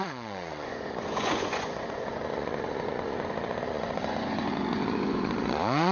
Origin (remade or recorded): remade